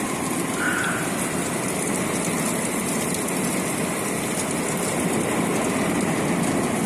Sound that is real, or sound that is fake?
real